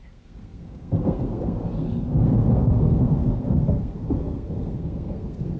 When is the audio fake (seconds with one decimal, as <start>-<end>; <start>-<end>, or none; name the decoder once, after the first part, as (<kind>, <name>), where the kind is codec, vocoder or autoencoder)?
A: 0.0-5.6 (codec, SNAC)